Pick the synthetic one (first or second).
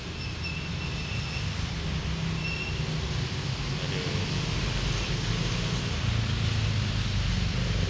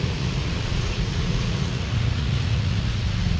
second